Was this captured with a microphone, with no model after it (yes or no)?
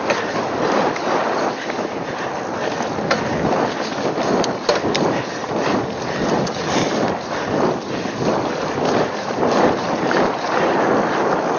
yes